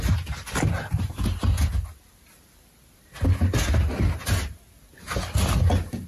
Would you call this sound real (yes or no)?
yes